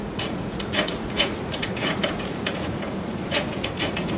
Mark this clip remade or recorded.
remade